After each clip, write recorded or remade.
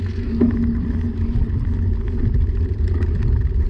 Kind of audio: recorded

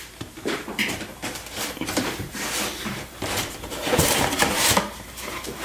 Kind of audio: remade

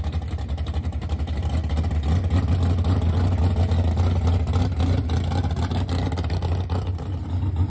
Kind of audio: recorded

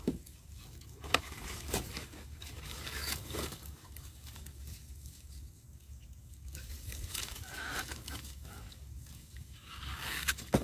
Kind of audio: remade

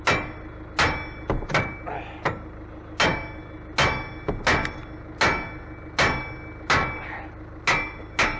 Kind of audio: recorded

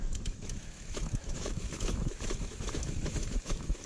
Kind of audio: remade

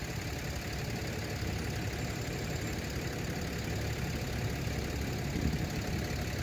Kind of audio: recorded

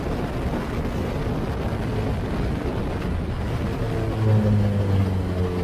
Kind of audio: recorded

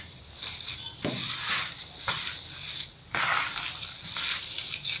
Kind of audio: recorded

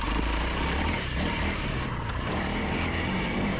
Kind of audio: remade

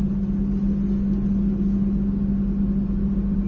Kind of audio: recorded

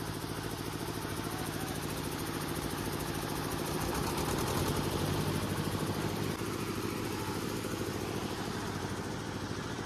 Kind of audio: remade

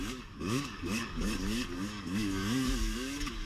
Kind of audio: remade